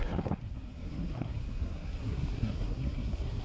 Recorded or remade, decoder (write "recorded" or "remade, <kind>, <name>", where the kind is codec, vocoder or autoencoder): remade, codec, SNAC